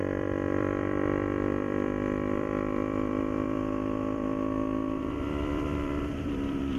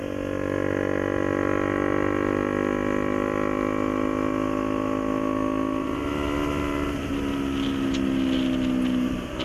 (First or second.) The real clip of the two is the second